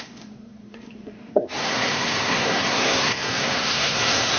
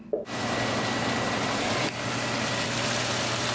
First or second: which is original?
second